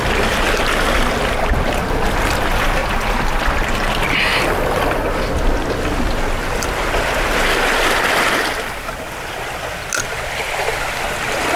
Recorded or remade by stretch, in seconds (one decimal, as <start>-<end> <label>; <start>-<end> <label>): 0.0-11.6 recorded